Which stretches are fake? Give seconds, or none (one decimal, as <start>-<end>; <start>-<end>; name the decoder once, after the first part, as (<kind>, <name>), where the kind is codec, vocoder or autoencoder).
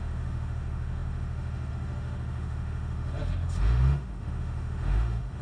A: 0.0-5.4 (autoencoder, DAC-VAE)